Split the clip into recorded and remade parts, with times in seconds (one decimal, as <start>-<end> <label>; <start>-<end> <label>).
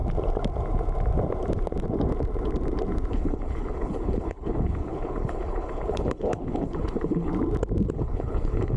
0.0-3.1 recorded; 3.1-7.3 remade; 7.3-7.9 recorded; 7.9-8.8 remade